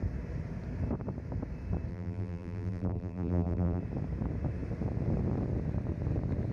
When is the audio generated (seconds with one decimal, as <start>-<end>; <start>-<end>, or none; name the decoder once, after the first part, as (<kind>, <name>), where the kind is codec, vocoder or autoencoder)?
1.9-3.8 (vocoder, BigVGAN v2)